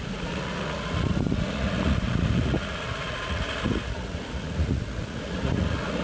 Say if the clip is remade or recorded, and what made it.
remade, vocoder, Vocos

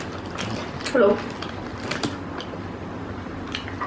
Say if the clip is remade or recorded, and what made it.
recorded